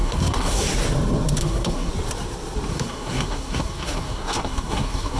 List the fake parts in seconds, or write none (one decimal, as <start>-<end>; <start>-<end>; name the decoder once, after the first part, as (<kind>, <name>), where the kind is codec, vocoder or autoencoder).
0.0-0.7 (codec, SNAC); 1.4-1.9; 2.7-5.2